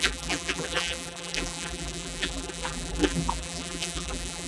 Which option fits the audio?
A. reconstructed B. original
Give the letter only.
A